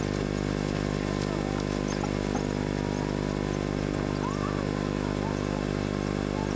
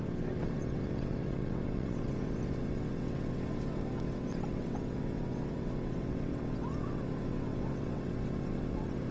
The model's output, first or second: second